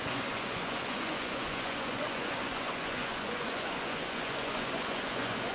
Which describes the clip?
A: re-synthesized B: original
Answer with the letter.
A